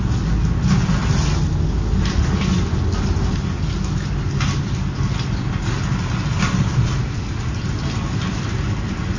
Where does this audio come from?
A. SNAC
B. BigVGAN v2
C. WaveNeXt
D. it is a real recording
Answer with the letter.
D